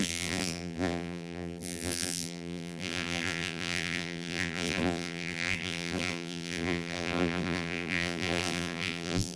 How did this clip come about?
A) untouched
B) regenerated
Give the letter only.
B